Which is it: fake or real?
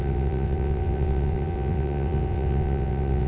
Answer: fake